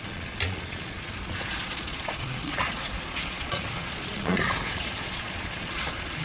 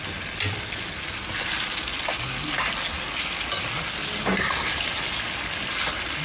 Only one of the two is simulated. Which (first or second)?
first